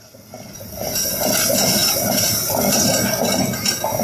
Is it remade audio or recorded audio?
recorded